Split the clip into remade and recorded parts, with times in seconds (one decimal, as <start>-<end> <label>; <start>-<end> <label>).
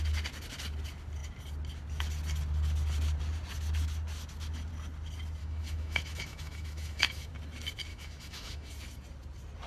0.0-5.4 recorded; 5.4-7.3 remade; 7.3-7.9 recorded; 7.9-8.7 remade; 8.7-9.7 recorded